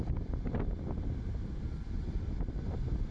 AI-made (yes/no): yes